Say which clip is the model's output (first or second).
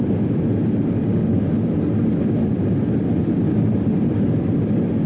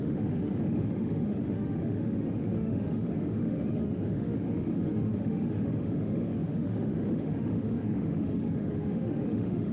second